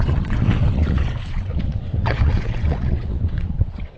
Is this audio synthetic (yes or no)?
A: yes